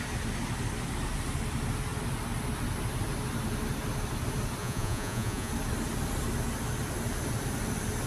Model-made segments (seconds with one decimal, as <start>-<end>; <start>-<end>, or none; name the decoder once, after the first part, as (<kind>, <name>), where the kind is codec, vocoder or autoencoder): 4.6-5.5 (vocoder, Vocos)